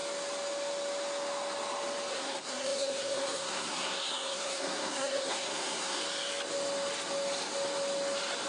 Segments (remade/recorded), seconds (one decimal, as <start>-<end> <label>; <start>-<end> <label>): 0.0-2.1 recorded; 2.1-6.0 remade; 6.0-8.5 recorded